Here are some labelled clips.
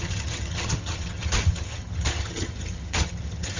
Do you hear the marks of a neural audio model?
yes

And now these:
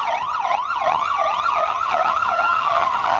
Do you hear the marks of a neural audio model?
yes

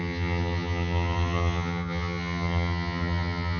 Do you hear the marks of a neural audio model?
yes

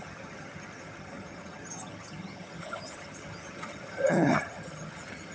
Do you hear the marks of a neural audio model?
yes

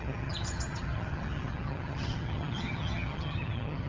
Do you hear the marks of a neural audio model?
yes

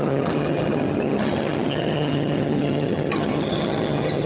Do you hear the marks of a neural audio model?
yes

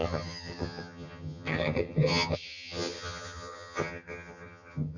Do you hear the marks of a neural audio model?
yes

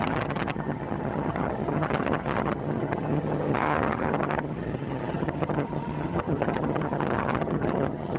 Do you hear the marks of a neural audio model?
yes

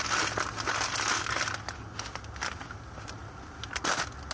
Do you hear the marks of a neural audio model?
no